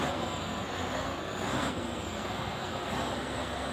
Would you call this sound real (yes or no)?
no